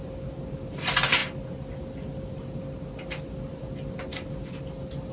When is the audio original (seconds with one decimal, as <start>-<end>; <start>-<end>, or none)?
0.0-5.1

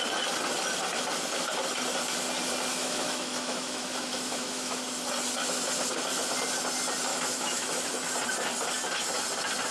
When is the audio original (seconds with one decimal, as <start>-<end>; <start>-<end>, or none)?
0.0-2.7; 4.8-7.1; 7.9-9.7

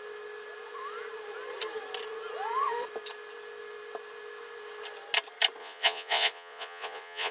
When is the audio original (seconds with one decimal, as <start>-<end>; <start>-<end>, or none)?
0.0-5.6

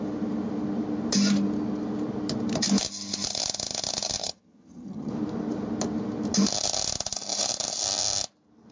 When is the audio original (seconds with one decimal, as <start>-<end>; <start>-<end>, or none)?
0.0-4.2; 5.1-8.7

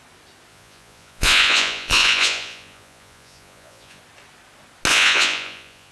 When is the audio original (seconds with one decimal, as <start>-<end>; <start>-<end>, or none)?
0.0-0.5; 4.0-4.9

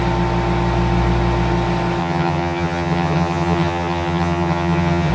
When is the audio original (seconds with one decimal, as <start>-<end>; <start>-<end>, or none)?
0.0-2.0

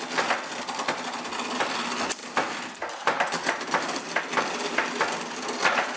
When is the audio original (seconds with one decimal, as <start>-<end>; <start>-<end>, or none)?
0.0-6.0